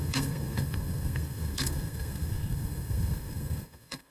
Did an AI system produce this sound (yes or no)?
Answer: yes